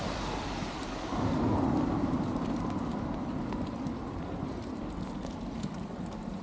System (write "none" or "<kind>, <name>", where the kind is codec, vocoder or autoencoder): vocoder, BigVGAN v2